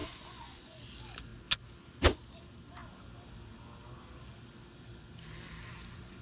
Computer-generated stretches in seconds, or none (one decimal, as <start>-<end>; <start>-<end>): 0.0-0.8